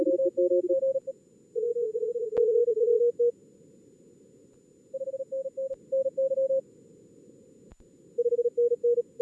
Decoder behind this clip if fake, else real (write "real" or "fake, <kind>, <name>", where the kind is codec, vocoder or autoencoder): real